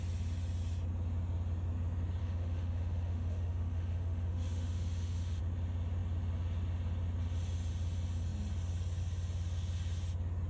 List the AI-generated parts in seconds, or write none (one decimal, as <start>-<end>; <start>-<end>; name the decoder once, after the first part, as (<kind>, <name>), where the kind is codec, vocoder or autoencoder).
2.2-5.4 (autoencoder, DAC-VAE)